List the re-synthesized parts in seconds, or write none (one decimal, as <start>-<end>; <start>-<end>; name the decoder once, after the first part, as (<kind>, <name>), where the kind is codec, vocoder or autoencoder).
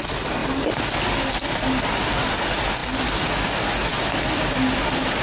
none